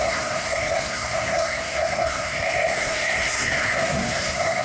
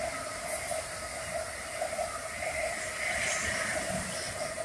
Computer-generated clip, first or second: first